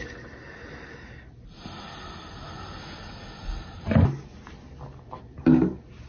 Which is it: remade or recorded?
recorded